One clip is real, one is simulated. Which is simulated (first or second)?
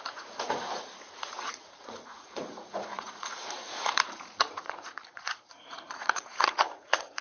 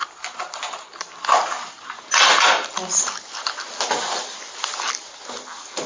first